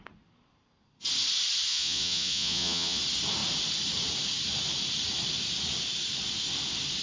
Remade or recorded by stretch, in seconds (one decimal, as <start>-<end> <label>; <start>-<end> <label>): 0.0-1.7 recorded; 1.7-3.0 remade; 3.0-7.0 recorded